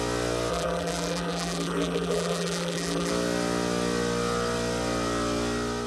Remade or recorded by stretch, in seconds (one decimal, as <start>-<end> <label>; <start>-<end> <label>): 0.0-0.5 recorded; 0.5-3.1 remade; 3.1-5.9 recorded